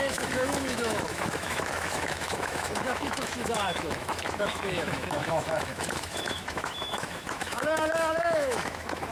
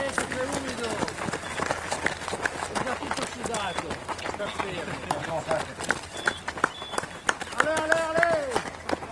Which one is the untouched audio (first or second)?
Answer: second